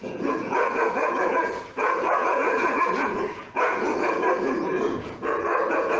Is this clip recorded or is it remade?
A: remade